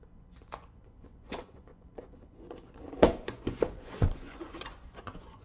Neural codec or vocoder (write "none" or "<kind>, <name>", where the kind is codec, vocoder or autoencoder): vocoder, Vocos